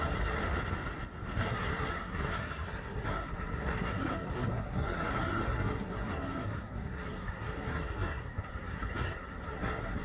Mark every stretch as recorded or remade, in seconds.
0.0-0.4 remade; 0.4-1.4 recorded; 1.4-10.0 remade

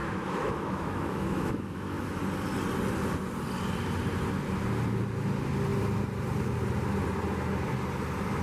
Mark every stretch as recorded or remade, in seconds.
0.0-2.2 remade; 2.2-8.4 recorded

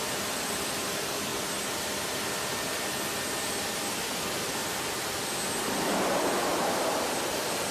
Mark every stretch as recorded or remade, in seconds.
0.0-1.3 remade; 1.3-3.9 recorded; 3.9-4.6 remade; 4.6-7.7 recorded

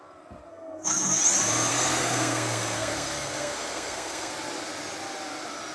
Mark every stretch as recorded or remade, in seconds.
0.0-0.5 recorded; 0.5-1.2 remade; 1.2-1.7 recorded; 1.7-4.3 remade; 4.3-5.7 recorded

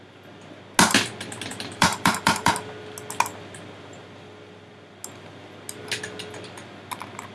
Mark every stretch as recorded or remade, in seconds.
0.0-1.5 recorded; 1.5-2.5 remade; 2.5-7.3 recorded